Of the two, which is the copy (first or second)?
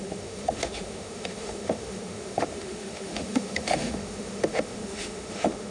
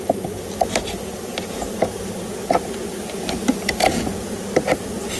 first